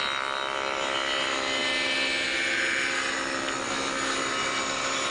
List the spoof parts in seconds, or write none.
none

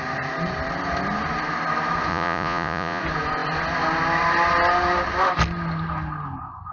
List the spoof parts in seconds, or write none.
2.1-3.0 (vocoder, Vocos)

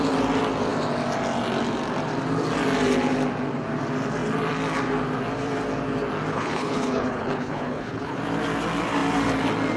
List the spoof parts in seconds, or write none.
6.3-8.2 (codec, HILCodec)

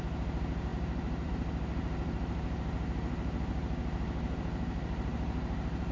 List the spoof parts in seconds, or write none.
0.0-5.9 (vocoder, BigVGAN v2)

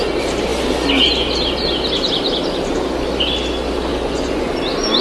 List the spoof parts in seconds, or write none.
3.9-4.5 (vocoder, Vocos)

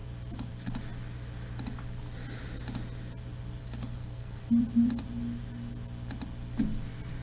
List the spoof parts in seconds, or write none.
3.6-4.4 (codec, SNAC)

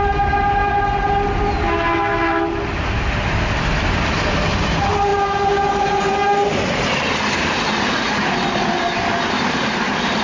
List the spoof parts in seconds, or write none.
none